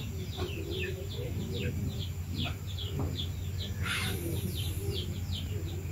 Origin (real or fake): fake